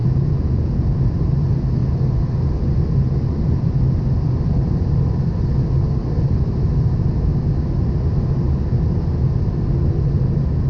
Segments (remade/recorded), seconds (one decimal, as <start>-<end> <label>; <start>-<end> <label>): 0.0-0.9 remade; 0.9-10.7 recorded